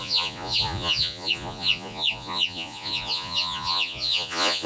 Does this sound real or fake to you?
fake